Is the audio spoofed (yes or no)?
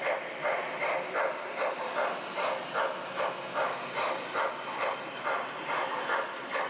no